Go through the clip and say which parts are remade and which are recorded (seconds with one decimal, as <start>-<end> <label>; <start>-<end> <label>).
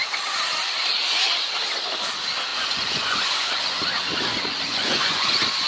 0.0-2.5 recorded; 2.5-3.8 remade; 3.8-4.7 recorded; 4.7-5.3 remade; 5.3-5.7 recorded